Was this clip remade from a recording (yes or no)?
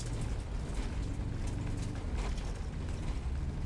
no